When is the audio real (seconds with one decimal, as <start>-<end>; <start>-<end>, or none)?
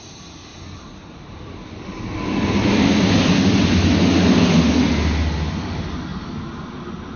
0.0-7.2